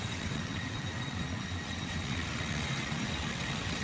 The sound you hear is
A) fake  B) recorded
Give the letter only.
A